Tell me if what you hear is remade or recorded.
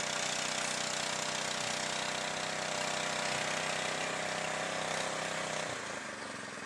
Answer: recorded